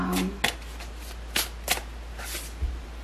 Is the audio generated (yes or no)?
no